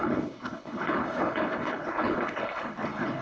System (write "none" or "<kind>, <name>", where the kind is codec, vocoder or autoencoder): codec, HILCodec